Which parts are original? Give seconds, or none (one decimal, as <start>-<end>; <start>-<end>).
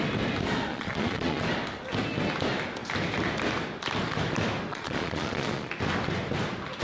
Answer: 0.0-0.7; 1.4-4.7; 5.7-6.8